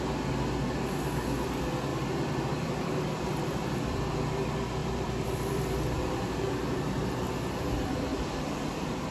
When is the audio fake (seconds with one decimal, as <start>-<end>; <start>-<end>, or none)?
1.9-4.1; 4.8-6.2; 8.1-9.1